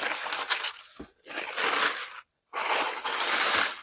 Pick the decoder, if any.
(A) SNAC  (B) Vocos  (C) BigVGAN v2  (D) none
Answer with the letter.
D